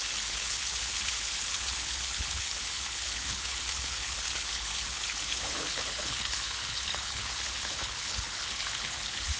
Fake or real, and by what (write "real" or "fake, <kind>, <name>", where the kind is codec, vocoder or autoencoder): fake, codec, HILCodec